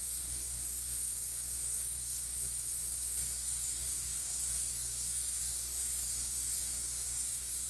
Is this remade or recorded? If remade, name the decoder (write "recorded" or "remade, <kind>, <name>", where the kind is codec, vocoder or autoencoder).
remade, codec, DAC